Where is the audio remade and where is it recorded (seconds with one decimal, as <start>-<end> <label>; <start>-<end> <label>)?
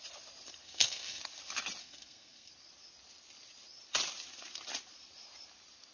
0.0-0.6 recorded; 0.6-1.2 remade; 1.2-1.8 recorded; 1.8-2.5 remade; 2.5-5.9 recorded